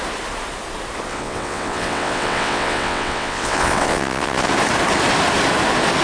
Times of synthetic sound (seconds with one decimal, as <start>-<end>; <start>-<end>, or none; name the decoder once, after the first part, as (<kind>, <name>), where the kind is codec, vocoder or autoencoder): 1.1-4.5 (vocoder, WaveNeXt)